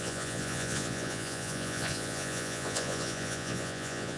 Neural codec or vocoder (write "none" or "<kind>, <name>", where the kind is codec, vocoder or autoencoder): vocoder, Vocos